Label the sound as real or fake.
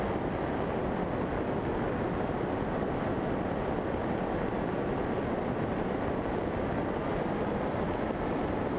real